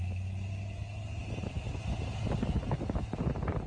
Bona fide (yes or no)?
yes